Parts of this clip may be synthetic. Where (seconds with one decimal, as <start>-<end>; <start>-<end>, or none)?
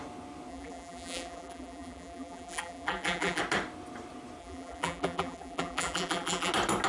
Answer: 0.5-3.4; 4.4-6.5